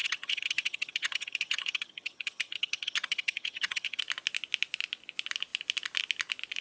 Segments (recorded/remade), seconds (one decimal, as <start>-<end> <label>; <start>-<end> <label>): 0.0-4.0 remade; 4.0-6.6 recorded